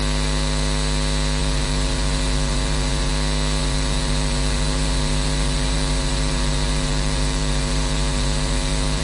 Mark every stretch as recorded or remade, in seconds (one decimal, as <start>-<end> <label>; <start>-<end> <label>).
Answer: 0.0-1.4 recorded; 1.4-3.1 remade; 3.1-3.6 recorded; 3.6-9.0 remade